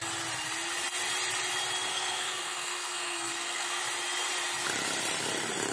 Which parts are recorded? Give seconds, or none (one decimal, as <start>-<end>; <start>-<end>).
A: 0.0-1.9; 3.8-5.7

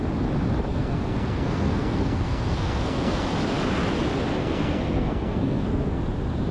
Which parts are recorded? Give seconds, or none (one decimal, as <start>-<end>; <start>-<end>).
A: 0.0-0.7; 3.3-4.4; 6.0-6.5

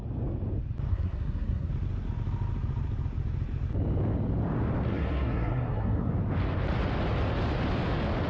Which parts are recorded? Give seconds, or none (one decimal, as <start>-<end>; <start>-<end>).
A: 0.0-0.9; 1.7-4.9; 6.1-8.3

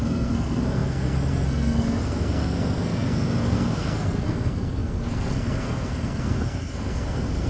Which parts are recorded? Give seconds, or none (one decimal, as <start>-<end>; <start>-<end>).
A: none

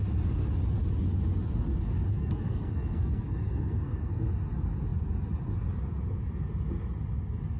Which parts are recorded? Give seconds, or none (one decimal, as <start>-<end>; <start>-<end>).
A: 0.0-2.1; 4.3-7.6

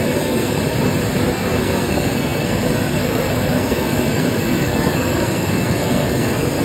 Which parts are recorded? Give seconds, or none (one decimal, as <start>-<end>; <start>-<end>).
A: 0.6-1.3

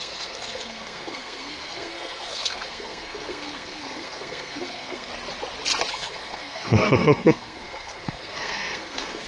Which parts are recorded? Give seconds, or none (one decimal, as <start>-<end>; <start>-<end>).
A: 5.1-5.9

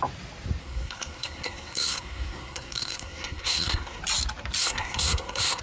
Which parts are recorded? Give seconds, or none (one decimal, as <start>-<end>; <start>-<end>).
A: 0.0-0.6; 4.0-4.6